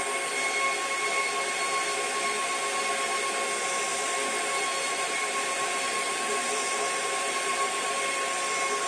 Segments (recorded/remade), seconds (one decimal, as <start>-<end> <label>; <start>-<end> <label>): 0.0-3.9 recorded; 3.9-8.0 remade; 8.0-8.9 recorded